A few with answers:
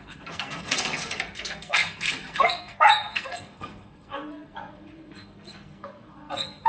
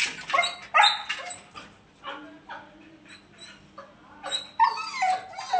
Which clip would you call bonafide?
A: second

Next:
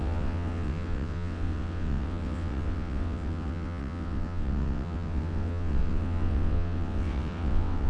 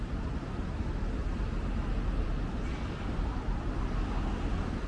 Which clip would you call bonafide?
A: second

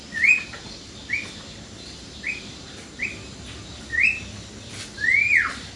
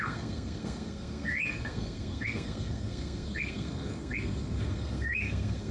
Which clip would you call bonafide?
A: first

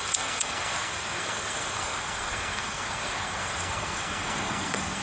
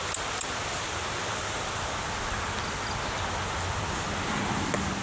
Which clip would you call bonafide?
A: second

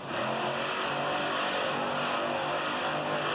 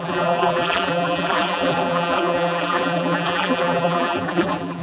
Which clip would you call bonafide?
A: first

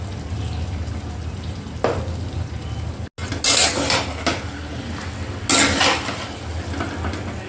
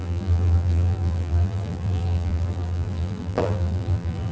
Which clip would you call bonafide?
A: first